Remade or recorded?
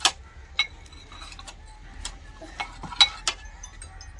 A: recorded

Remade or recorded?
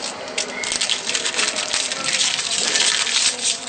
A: recorded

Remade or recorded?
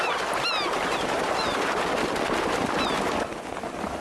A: recorded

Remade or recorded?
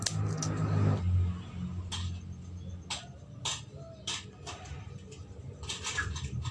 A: recorded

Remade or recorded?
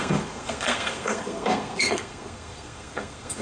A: remade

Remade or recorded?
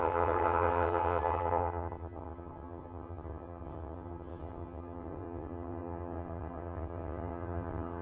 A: remade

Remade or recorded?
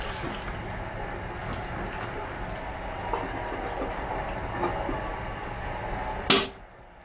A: recorded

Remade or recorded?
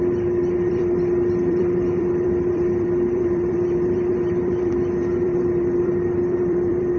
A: remade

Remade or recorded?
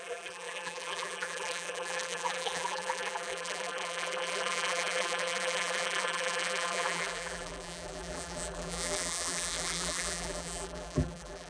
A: remade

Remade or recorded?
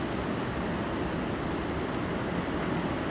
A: recorded